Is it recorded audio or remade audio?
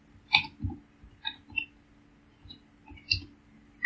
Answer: recorded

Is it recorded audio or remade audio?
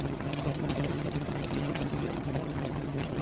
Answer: remade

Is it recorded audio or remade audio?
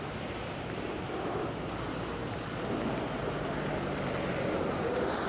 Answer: recorded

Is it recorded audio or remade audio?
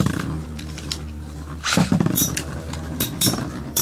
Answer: remade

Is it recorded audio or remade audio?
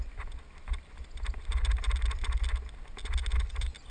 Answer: recorded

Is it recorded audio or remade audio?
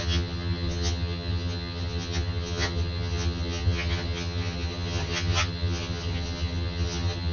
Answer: remade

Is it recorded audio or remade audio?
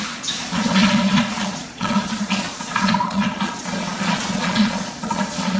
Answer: remade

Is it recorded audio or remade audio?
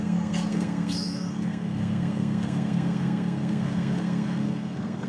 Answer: remade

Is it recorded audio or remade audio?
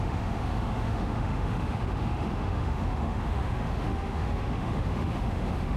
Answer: remade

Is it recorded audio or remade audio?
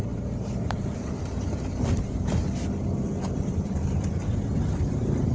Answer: remade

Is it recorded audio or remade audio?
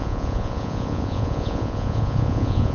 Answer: remade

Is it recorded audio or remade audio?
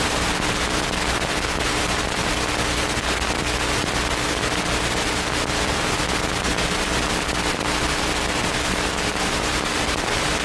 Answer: recorded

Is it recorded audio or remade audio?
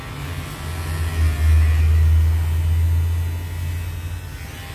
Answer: recorded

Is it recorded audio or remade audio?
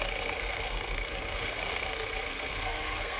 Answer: remade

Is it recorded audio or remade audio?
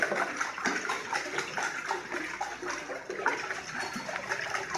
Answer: recorded